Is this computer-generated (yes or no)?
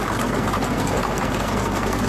yes